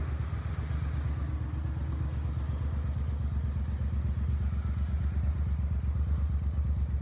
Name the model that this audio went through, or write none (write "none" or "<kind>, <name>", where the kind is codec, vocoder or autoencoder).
none